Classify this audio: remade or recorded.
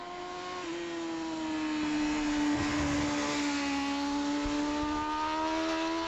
recorded